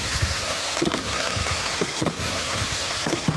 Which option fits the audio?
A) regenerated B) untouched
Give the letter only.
A